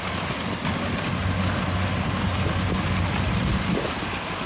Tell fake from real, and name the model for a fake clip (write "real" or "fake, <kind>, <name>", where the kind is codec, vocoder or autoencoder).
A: real